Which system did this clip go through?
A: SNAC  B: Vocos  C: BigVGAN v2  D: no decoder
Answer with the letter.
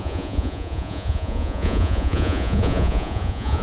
B